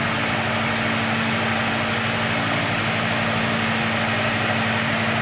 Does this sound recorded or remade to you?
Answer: recorded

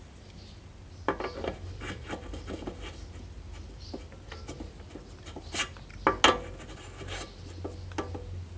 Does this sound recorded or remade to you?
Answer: recorded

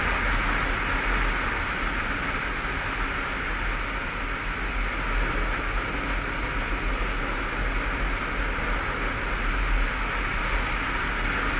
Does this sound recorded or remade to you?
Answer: recorded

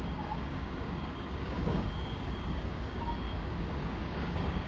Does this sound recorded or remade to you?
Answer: remade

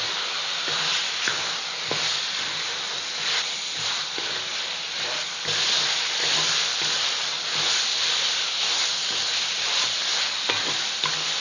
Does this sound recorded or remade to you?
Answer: recorded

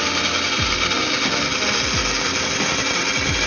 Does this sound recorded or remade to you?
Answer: recorded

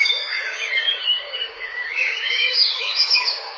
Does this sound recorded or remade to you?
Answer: remade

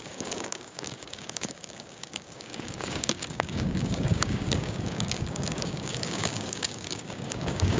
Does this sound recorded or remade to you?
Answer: remade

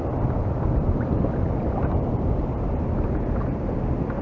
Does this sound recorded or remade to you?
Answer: recorded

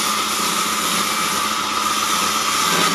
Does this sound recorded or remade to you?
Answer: recorded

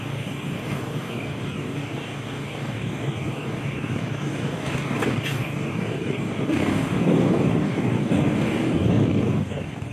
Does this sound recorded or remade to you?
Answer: remade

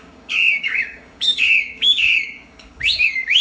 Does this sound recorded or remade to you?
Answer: remade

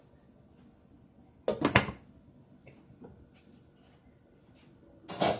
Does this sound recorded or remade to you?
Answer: recorded